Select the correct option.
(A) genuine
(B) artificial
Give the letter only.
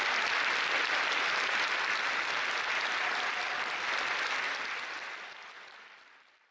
A